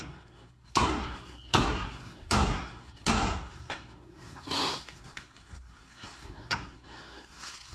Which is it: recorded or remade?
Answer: remade